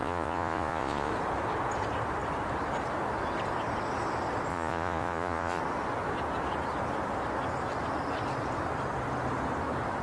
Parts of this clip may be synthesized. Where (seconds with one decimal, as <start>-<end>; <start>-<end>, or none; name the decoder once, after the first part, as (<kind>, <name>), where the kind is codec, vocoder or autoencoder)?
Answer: 0.0-1.1 (vocoder, Vocos); 4.5-5.6